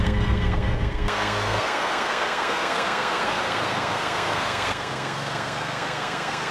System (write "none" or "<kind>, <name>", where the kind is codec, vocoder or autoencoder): codec, SNAC